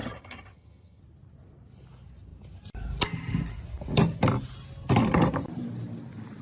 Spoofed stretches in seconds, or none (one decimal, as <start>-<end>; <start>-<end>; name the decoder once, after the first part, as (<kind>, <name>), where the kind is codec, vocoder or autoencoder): 0.0-1.0 (vocoder, HiFi-GAN)